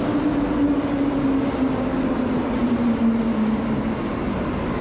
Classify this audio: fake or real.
real